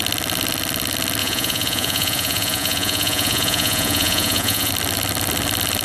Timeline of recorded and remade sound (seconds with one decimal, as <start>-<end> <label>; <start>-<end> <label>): 0.0-1.2 recorded; 1.2-4.7 remade; 4.7-5.8 recorded